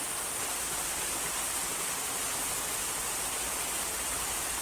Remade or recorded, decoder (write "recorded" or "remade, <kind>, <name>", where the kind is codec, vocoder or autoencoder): remade, vocoder, BigVGAN v2